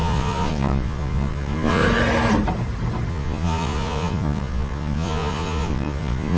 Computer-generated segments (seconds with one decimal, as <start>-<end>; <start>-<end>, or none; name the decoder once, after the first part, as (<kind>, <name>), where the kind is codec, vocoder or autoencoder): 0.0-1.8 (vocoder, Vocos); 3.1-6.4